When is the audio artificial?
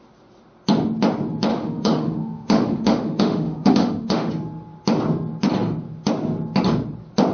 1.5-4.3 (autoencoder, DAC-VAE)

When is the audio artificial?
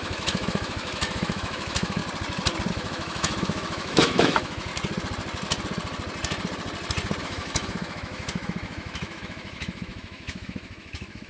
0.0-2.0 (autoencoder, DAC-VAE); 2.7-4.7; 7.2-11.3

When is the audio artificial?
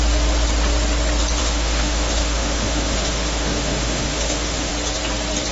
1.4-4.7 (autoencoder, DAC-VAE)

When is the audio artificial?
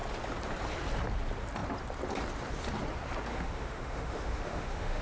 3.3-5.0 (autoencoder, DAC-VAE)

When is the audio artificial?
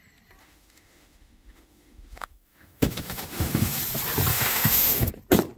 0.4-3.8 (autoencoder, DAC-VAE); 4.3-5.1